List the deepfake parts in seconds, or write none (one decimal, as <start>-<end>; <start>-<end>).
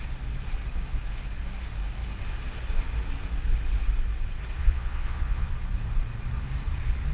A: 4.6-5.5